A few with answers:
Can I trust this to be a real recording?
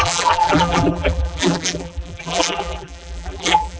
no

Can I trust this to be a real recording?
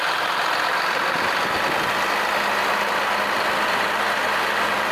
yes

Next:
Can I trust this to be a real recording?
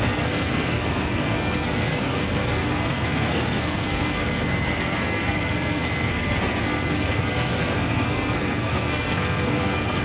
no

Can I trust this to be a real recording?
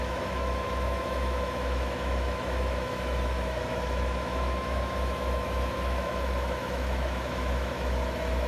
no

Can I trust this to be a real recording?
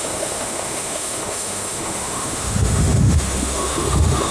no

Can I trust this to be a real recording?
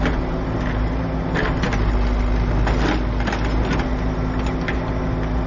yes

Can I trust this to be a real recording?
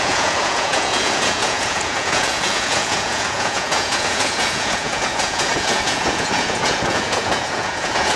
no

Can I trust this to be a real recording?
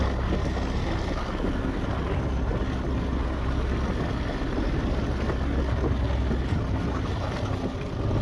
yes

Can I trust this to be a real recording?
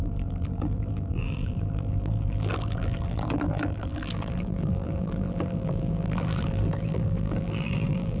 no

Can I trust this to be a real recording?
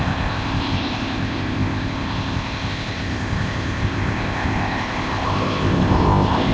no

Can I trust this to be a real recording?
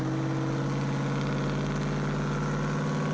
yes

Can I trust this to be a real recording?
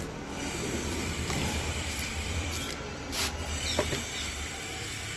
no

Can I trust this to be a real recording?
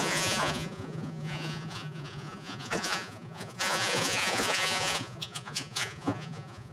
no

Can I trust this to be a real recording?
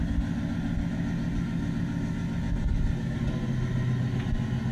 yes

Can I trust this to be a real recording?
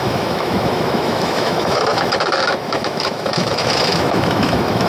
no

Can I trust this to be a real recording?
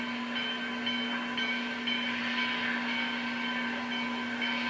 yes